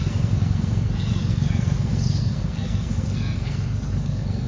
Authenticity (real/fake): fake